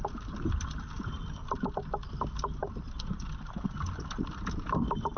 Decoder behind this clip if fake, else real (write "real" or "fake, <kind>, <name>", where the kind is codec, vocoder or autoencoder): real